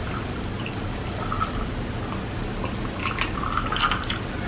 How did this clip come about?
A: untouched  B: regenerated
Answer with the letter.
A